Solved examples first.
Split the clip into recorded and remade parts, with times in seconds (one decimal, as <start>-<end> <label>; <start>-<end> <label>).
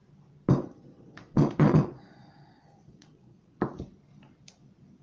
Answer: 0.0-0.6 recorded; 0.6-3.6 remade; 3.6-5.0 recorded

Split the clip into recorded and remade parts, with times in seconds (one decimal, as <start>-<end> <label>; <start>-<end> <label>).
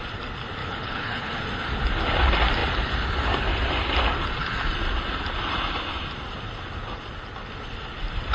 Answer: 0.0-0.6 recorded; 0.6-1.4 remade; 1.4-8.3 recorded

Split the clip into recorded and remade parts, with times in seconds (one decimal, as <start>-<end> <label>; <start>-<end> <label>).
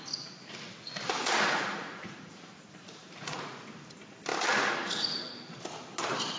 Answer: 0.0-1.2 recorded; 1.2-3.7 remade; 3.7-6.4 recorded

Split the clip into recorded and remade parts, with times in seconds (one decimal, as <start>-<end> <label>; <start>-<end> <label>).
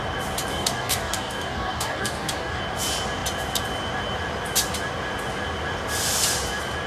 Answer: 0.0-0.5 recorded; 0.5-2.6 remade; 2.6-6.9 recorded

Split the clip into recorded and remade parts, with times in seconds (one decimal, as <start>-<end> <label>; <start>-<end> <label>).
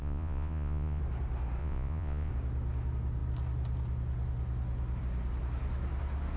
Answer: 0.0-1.0 remade; 1.0-1.6 recorded; 1.6-2.3 remade; 2.3-6.4 recorded